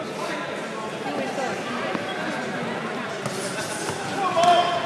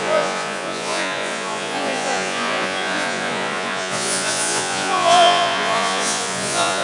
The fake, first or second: second